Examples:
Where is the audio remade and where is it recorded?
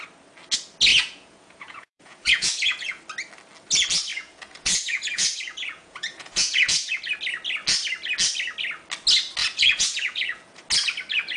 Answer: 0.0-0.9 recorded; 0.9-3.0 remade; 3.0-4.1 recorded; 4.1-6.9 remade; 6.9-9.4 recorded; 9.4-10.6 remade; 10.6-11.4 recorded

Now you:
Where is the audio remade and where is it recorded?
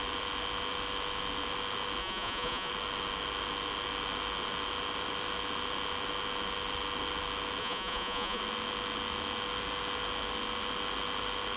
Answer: 0.0-2.0 recorded; 2.0-2.7 remade; 2.7-7.6 recorded; 7.6-8.4 remade; 8.4-11.6 recorded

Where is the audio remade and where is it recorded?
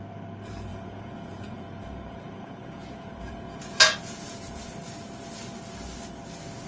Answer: 0.0-0.7 recorded; 0.7-4.7 remade; 4.7-6.7 recorded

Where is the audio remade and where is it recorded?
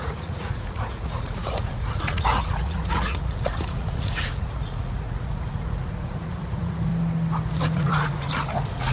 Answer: 0.0-6.9 remade; 6.9-7.5 recorded; 7.5-8.9 remade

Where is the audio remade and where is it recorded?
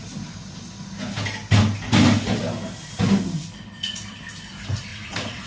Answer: 0.0-4.9 recorded; 4.9-5.5 remade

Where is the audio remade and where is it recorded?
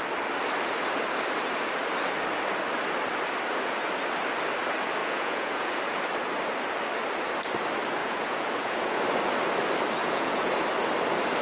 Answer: 0.0-5.0 recorded; 5.0-5.8 remade; 5.8-8.0 recorded; 8.0-9.0 remade; 9.0-10.0 recorded; 10.0-10.5 remade; 10.5-11.4 recorded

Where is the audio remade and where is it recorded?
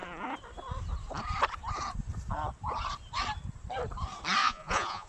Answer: 0.0-4.4 recorded; 4.4-5.1 remade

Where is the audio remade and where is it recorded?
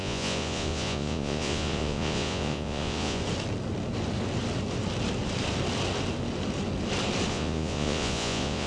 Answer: 0.0-3.2 remade; 3.2-7.3 recorded; 7.3-8.7 remade